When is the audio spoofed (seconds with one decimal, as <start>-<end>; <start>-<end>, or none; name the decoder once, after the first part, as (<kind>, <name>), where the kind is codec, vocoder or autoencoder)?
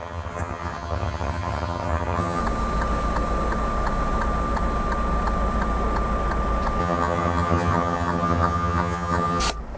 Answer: 0.0-2.4 (vocoder, HiFi-GAN); 6.8-9.4